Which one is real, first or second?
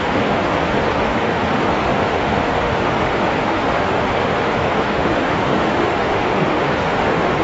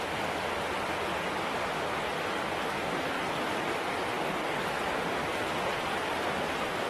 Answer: second